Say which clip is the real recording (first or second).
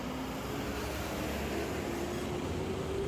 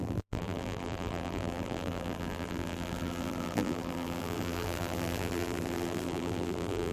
first